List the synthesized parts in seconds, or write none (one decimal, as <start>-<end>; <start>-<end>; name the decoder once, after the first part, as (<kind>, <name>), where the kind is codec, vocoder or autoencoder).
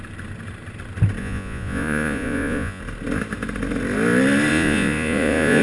1.2-2.8 (vocoder, Vocos); 4.5-5.6